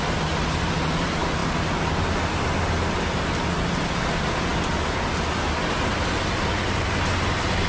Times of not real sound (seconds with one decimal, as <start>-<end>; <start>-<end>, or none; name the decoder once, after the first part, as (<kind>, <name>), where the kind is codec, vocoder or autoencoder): none